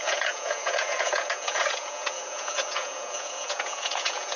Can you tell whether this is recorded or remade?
remade